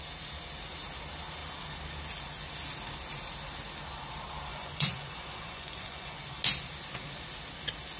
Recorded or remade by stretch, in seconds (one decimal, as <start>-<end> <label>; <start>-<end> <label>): 0.0-4.5 recorded; 4.5-6.2 remade; 6.2-8.0 recorded